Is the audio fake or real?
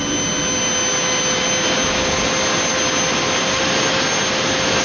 real